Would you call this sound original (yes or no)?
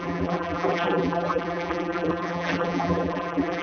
no